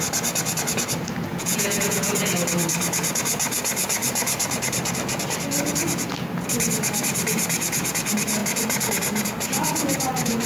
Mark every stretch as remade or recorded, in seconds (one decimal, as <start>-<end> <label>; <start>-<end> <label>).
0.0-1.3 recorded; 1.3-2.3 remade; 2.3-10.5 recorded